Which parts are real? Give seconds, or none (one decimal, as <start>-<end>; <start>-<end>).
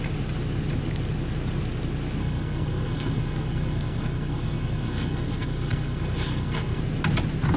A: 0.0-2.2; 6.8-7.6